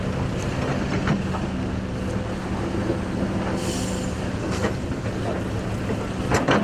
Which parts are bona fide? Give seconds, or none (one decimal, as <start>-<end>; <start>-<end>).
0.0-4.4; 5.1-6.6